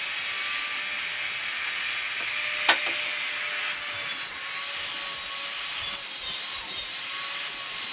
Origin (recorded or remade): recorded